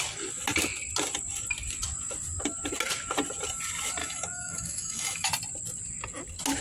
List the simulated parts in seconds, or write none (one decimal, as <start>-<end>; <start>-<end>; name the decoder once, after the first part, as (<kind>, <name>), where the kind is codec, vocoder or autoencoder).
4.0-5.3 (autoencoder, DAC-VAE)